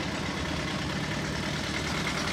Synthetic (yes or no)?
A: no